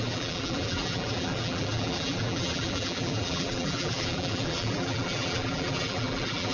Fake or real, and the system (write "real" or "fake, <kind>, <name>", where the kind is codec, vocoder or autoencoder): fake, vocoder, BigVGAN v2